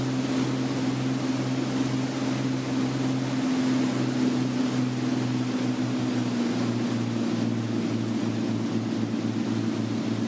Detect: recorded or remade recorded